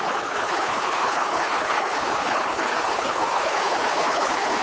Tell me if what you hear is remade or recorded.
remade